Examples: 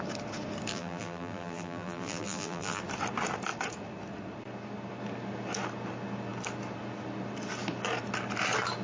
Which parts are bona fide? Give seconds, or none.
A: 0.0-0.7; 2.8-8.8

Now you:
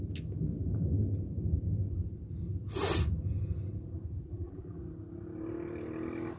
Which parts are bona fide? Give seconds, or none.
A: 0.0-4.3; 4.8-6.4

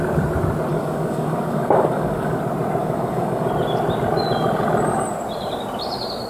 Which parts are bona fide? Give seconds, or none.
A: 0.0-0.7; 2.4-2.8; 3.5-6.3